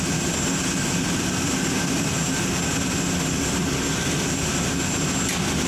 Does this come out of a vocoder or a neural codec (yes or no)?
no